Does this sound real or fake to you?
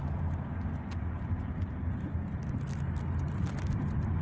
real